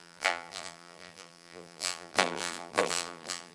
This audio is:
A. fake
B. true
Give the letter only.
A